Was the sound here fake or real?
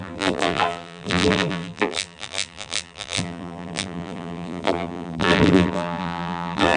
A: fake